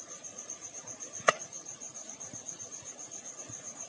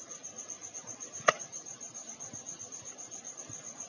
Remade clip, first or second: first